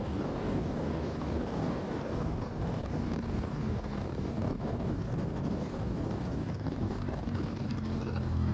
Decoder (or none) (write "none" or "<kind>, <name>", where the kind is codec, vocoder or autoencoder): codec, DAC